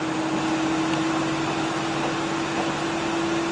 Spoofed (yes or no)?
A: no